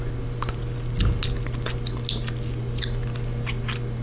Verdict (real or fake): real